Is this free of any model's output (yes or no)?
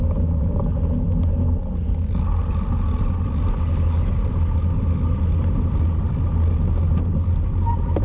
yes